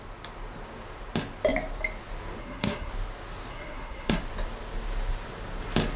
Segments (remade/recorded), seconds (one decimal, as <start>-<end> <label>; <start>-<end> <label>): 0.0-2.4 recorded; 2.4-2.9 remade; 2.9-3.5 recorded; 3.5-4.2 remade; 4.2-6.0 recorded